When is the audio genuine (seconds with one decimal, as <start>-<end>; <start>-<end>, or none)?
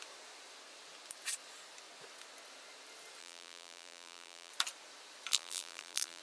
0.0-3.2; 4.5-5.3